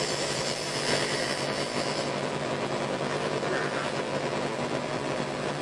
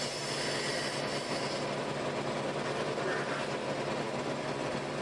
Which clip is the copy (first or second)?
first